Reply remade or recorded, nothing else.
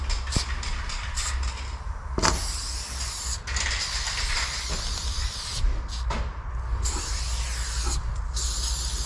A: recorded